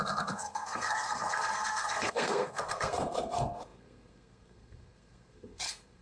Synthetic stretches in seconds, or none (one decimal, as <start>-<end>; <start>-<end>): 0.0-6.0